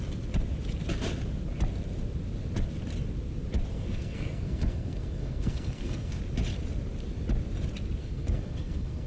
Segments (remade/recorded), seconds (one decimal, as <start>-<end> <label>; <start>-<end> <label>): 0.0-3.7 recorded; 3.7-6.2 remade; 6.2-8.0 recorded; 8.0-9.1 remade